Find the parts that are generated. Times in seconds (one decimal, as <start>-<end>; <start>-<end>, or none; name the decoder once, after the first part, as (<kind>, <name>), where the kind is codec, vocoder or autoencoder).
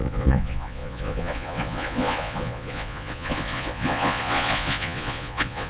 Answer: 0.0-5.7 (vocoder, Vocos)